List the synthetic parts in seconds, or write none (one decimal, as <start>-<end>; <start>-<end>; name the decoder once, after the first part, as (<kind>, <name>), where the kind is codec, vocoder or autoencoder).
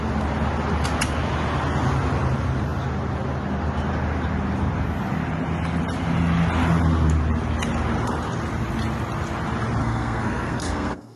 9.8-11.2 (codec, SNAC)